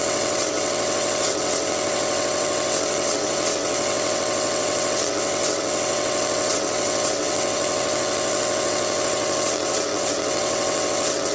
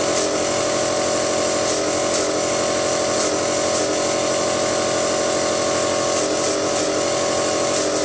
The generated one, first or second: first